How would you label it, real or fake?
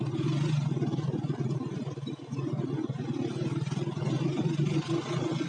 real